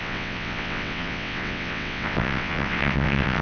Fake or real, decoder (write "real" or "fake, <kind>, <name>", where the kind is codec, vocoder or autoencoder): fake, vocoder, WaveNeXt